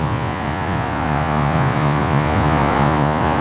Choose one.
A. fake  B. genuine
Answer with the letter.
A